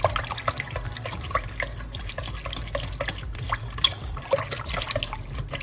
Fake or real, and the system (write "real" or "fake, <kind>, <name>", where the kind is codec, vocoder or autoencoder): real